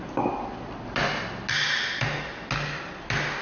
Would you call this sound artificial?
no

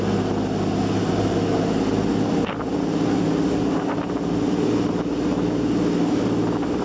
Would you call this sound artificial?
no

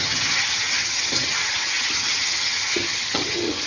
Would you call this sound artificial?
yes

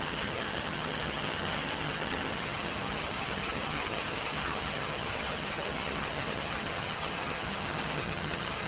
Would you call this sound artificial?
yes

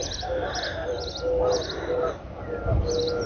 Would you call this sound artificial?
no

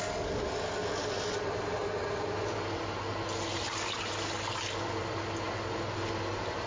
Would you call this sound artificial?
no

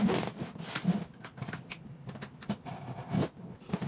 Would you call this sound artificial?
no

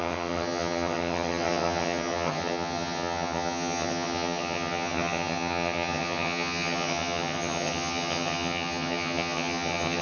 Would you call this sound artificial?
yes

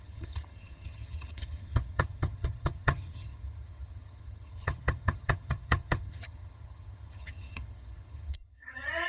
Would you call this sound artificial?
yes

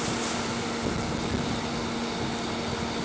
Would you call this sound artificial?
no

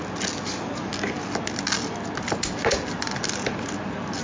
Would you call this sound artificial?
no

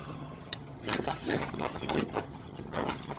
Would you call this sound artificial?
yes